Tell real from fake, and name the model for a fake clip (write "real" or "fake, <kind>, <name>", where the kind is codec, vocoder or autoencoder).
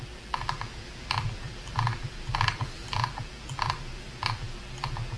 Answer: fake, vocoder, BigVGAN v2